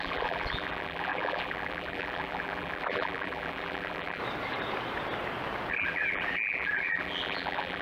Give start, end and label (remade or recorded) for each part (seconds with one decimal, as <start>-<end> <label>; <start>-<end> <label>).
0.0-4.2 remade; 4.2-5.7 recorded; 5.7-7.8 remade